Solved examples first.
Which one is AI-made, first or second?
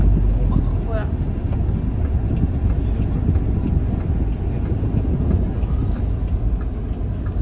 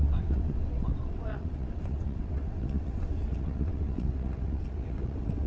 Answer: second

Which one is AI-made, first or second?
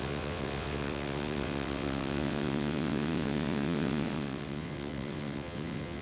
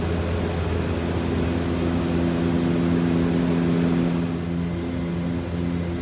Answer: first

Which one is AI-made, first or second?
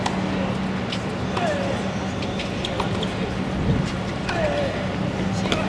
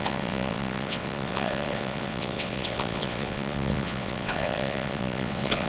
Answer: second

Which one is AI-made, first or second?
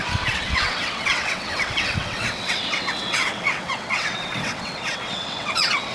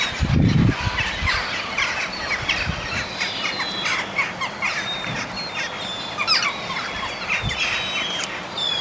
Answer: first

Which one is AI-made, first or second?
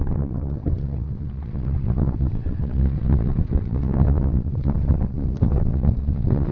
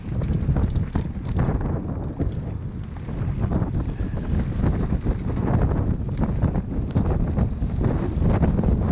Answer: first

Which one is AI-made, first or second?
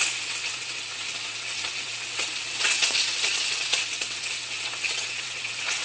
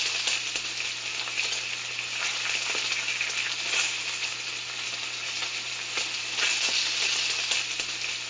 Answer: first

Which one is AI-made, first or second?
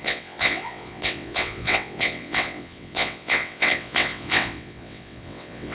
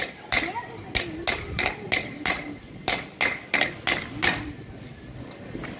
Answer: first